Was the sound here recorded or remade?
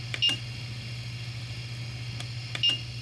recorded